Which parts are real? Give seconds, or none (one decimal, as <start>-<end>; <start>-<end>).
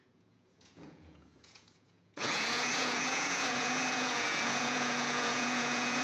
none